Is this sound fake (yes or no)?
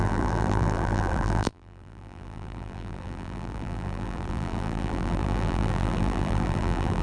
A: yes